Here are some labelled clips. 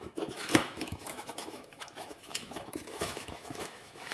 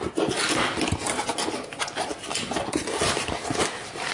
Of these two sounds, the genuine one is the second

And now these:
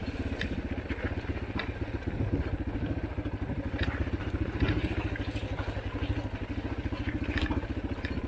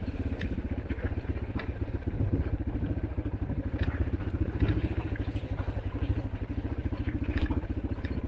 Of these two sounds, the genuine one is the first